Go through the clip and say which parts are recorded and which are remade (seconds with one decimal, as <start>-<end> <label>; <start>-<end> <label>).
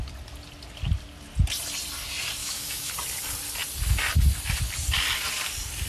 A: 0.0-2.4 recorded; 2.4-2.9 remade; 2.9-5.9 recorded